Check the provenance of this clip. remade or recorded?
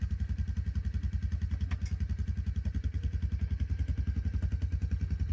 recorded